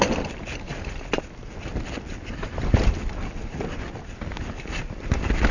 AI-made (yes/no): no